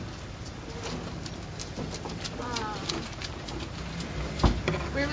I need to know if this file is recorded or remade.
recorded